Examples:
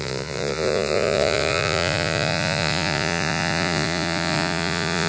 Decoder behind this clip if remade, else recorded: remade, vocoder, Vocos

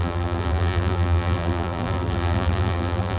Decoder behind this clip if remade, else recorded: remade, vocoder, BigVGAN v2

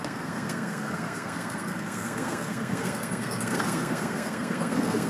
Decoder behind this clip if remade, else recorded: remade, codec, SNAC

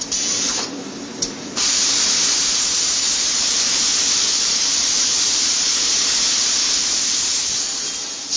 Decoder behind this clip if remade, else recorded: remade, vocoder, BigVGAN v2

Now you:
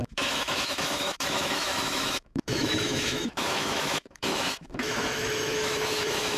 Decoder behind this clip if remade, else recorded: remade, autoencoder, DAC-VAE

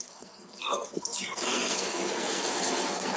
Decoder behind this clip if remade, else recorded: remade, codec, SNAC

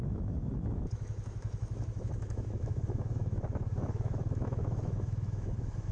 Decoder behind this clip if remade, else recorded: remade, autoencoder, DAC-VAE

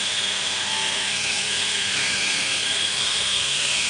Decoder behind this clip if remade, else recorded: remade, codec, SNAC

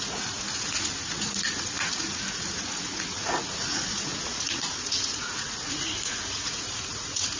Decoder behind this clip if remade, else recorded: remade, vocoder, Vocos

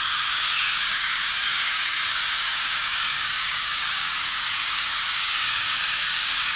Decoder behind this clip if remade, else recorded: remade, codec, DAC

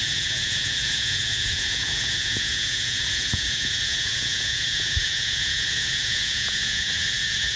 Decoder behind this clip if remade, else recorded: remade, vocoder, Vocos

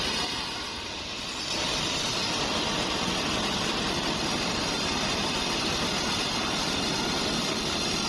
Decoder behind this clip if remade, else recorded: remade, vocoder, BigVGAN v2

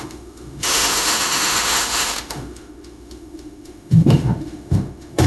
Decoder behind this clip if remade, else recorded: remade, autoencoder, DAC-VAE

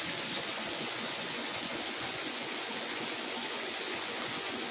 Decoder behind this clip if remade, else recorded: remade, vocoder, Vocos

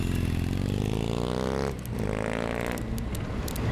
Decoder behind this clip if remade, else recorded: recorded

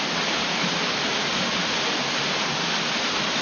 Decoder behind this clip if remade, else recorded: recorded